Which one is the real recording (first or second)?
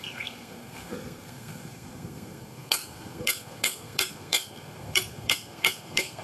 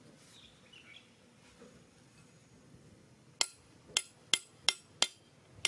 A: second